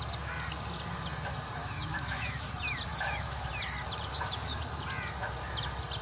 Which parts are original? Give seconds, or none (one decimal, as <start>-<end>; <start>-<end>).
0.0-1.6; 2.5-2.9; 3.5-4.1; 4.6-6.0